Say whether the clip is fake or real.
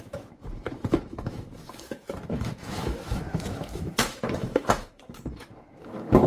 fake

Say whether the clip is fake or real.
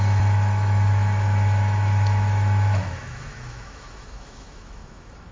fake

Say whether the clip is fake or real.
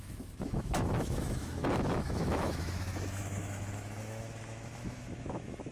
fake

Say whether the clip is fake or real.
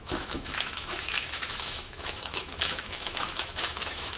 fake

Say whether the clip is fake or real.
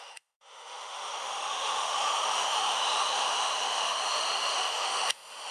fake